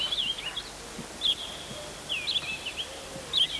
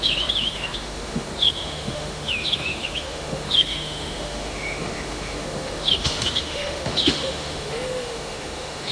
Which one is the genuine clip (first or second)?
first